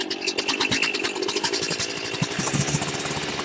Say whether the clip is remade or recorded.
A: recorded